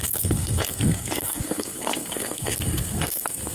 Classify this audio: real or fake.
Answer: fake